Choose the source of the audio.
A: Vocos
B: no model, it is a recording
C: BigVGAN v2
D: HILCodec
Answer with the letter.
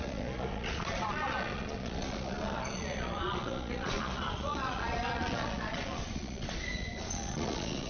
A